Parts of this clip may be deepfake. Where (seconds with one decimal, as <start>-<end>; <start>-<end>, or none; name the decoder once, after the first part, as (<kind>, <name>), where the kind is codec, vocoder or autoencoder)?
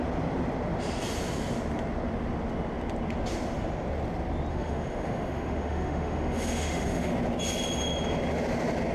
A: 4.5-7.1 (autoencoder, DAC-VAE)